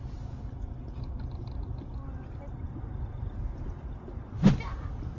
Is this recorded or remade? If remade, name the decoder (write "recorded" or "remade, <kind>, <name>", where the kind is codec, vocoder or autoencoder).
recorded